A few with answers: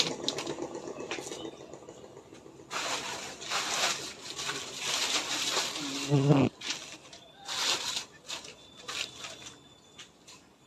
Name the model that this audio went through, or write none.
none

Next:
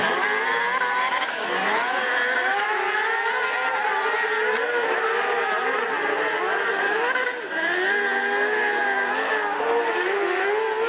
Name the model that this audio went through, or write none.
none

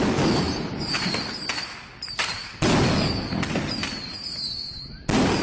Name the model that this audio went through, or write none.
none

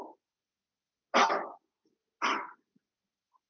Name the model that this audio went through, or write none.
none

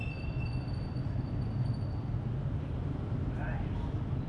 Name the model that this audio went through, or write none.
none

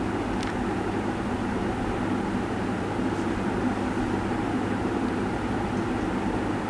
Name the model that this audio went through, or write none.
none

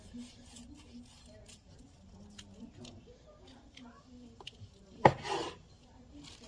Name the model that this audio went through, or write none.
none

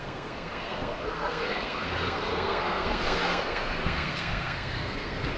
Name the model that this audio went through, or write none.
codec, SNAC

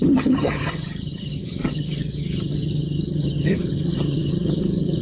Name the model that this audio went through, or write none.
vocoder, HiFi-GAN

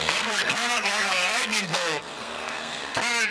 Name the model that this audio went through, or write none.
codec, SNAC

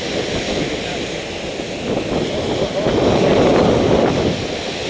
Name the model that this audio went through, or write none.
none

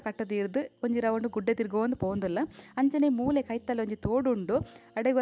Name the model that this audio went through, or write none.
none